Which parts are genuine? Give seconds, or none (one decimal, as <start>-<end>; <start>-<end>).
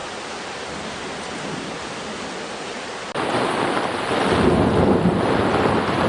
0.0-6.1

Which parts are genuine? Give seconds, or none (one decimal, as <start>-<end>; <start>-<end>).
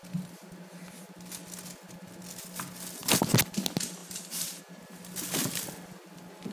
0.0-4.0; 4.6-6.5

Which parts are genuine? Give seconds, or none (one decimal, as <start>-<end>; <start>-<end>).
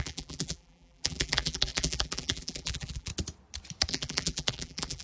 3.1-3.9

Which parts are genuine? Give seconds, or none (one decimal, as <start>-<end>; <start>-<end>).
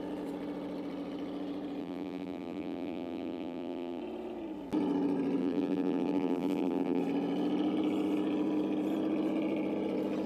0.0-1.8; 4.0-5.4; 7.0-10.3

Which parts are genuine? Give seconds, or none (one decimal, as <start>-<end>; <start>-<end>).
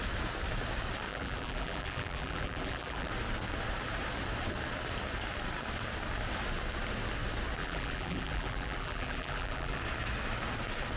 0.0-1.1; 3.1-7.6; 9.8-11.0